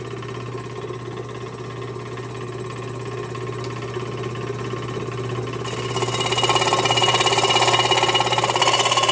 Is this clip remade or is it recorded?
recorded